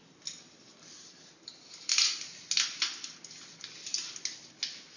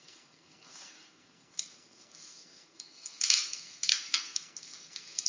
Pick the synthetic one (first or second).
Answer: second